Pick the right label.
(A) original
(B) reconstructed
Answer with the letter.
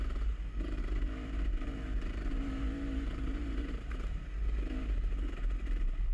B